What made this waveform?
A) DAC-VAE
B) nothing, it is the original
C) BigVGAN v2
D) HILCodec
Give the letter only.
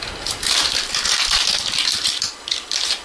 C